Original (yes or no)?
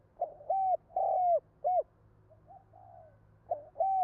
yes